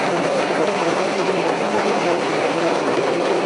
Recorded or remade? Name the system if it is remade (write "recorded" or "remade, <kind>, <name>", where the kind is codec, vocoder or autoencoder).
remade, codec, SNAC